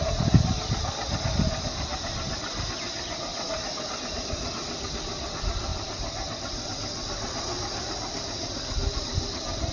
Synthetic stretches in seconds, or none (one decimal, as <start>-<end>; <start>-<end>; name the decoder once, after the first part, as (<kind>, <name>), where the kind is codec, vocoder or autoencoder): 3.3-4.0 (vocoder, BigVGAN v2); 5.7-9.7